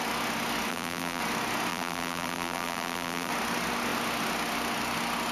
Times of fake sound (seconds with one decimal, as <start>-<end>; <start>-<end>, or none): 0.7-1.2; 1.7-3.3